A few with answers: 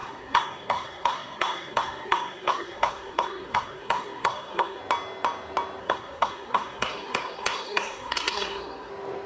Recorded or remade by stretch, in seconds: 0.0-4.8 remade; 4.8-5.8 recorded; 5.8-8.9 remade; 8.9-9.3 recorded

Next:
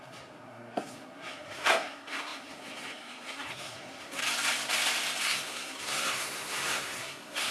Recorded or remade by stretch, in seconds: 0.0-4.2 remade; 4.2-5.2 recorded; 5.2-7.5 remade

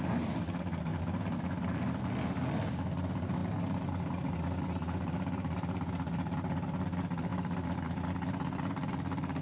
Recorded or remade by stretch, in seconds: 0.0-9.4 recorded

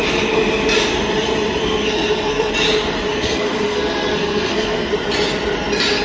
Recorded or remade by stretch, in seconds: 0.0-1.6 recorded; 1.6-2.5 remade; 2.5-3.1 recorded; 3.1-4.9 remade; 4.9-6.0 recorded

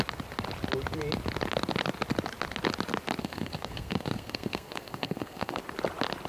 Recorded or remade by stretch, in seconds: 0.0-3.2 recorded; 3.2-5.6 remade; 5.6-6.3 recorded

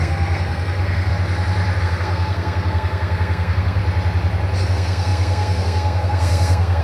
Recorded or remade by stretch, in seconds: 0.0-1.1 remade; 1.1-1.8 recorded; 1.8-3.8 remade; 3.8-4.6 recorded; 4.6-6.8 remade